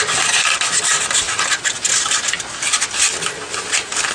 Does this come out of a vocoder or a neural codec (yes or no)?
no